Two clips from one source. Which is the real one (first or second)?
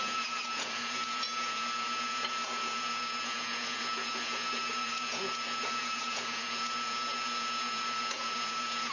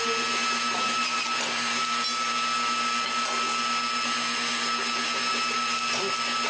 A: second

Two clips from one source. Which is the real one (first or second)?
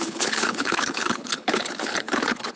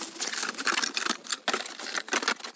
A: second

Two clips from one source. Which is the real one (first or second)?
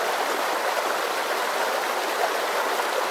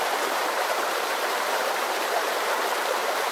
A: first